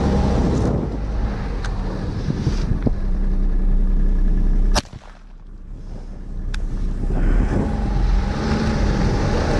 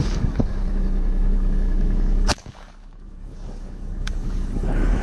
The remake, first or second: second